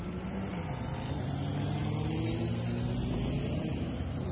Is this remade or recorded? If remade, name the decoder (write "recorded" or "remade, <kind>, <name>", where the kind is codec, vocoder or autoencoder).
recorded